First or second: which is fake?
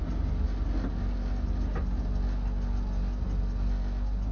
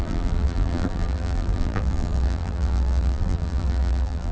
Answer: second